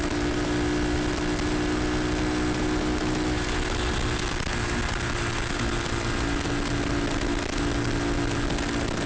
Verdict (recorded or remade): recorded